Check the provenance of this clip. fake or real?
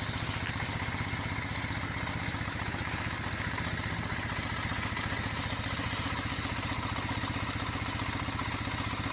real